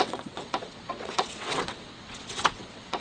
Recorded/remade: remade